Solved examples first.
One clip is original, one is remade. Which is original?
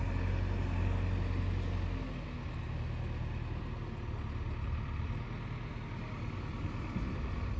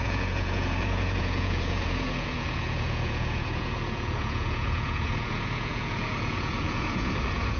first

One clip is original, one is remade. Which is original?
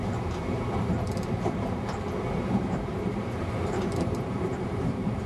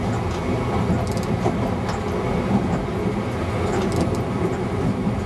second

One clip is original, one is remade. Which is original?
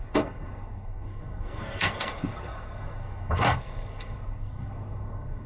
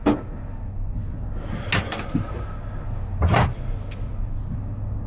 second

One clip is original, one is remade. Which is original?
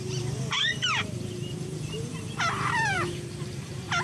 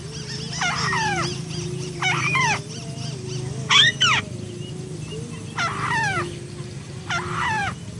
second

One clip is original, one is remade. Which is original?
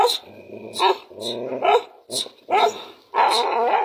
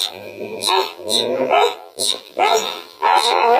first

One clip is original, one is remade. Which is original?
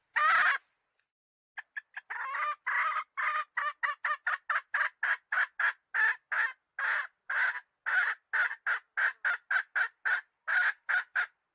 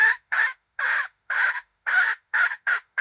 first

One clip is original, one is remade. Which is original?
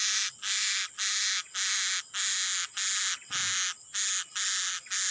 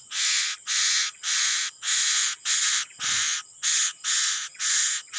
first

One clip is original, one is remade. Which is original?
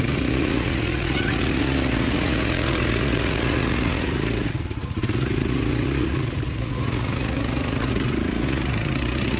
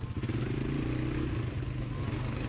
second